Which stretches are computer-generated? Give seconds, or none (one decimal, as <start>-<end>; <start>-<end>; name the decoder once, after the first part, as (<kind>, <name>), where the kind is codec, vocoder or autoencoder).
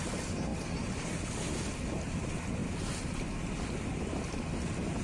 none